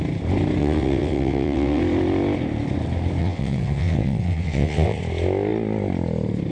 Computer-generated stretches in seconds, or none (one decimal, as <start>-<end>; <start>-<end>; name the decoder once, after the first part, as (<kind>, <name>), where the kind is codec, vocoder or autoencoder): 0.6-1.8 (vocoder, WaveNeXt); 3.2-5.0